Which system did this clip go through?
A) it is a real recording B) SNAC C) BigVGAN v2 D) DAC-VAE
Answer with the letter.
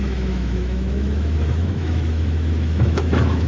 D